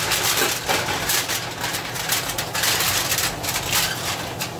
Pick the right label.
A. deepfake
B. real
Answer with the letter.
B